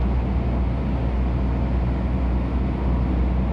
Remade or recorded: recorded